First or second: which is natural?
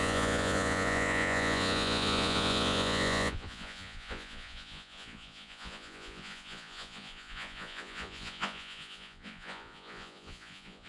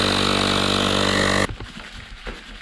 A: second